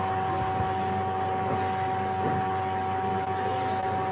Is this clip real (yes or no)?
yes